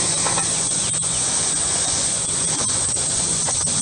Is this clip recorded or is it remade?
remade